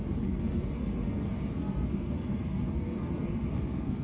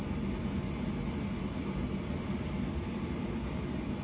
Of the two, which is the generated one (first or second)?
first